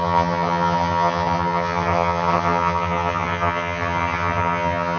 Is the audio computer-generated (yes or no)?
yes